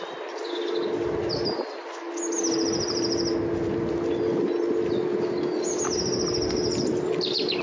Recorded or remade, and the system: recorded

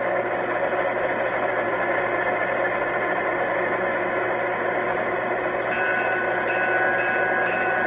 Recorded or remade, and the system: recorded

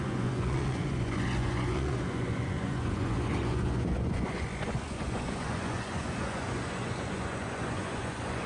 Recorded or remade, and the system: remade, vocoder, Vocos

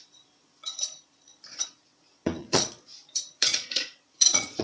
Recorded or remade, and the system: remade, vocoder, Vocos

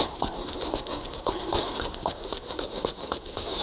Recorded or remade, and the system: remade, codec, SNAC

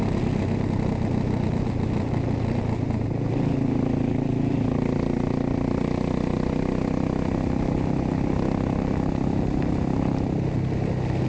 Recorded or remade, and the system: recorded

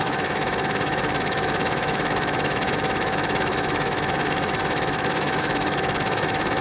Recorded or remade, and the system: remade, autoencoder, DAC-VAE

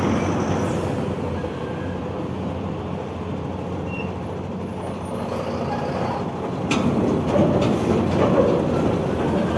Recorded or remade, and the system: recorded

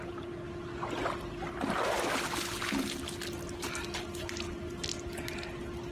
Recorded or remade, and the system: recorded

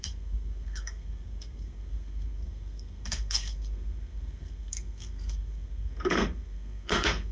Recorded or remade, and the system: remade, codec, SNAC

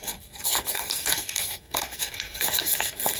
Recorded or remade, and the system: remade, codec, SNAC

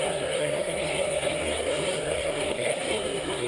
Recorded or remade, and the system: remade, codec, SNAC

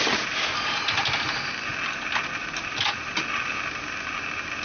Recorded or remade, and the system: recorded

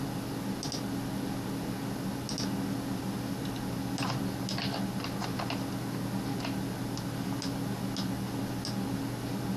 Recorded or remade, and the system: recorded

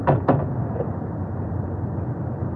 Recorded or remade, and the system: recorded